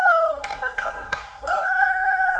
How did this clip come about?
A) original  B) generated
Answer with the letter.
B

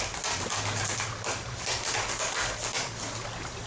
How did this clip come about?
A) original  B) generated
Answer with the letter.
A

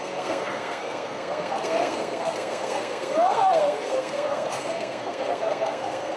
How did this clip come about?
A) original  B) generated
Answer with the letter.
B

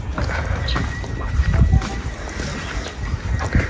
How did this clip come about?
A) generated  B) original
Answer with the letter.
B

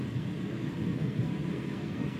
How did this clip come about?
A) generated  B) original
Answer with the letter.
A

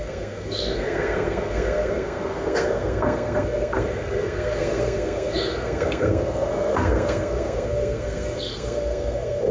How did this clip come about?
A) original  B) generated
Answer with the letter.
B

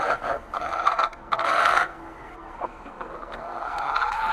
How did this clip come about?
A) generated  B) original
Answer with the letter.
A